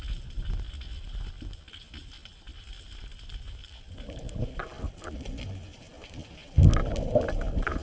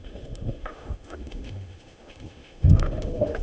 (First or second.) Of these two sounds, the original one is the first